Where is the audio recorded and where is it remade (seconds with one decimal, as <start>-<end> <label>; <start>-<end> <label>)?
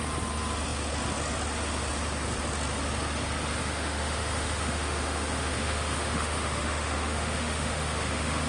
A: 0.0-3.6 recorded; 3.6-8.5 remade